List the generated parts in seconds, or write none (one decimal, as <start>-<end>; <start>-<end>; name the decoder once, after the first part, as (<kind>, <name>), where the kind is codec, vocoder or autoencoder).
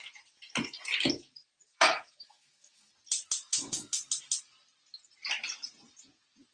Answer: 1.7-2.9 (autoencoder, DAC-VAE); 3.5-4.0